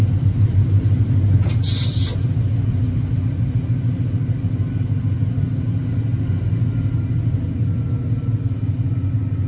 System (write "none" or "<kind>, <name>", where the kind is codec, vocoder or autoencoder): none